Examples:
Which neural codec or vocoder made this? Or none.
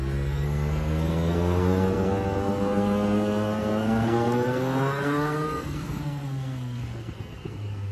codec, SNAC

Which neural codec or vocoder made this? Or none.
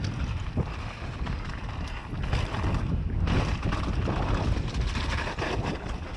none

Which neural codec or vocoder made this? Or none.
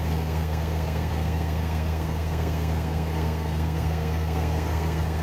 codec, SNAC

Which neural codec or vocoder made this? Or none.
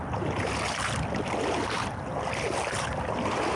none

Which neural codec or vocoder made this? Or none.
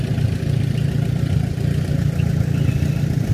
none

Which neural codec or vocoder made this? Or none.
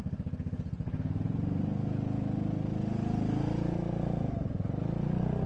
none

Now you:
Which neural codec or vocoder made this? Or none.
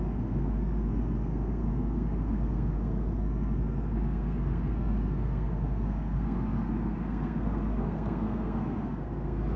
codec, SNAC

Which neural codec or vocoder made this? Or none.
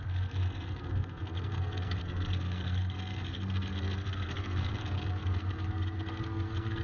codec, SNAC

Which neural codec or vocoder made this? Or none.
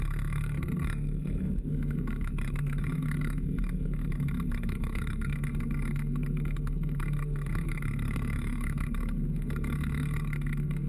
codec, SNAC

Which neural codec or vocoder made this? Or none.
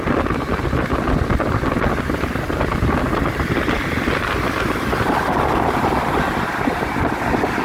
none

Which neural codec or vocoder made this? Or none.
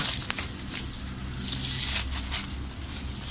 none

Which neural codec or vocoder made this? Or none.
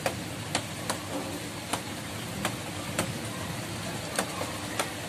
none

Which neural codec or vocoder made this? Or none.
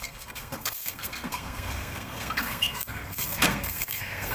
codec, SNAC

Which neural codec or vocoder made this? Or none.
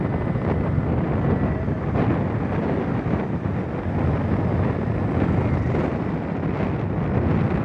none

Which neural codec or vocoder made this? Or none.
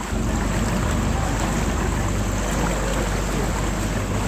none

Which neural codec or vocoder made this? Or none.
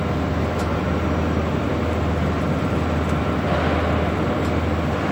none